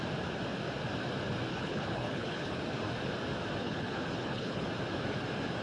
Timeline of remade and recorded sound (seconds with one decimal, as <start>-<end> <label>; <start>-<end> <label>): 0.0-1.5 recorded; 1.5-2.6 remade; 2.6-3.6 recorded; 3.6-4.7 remade; 4.7-5.6 recorded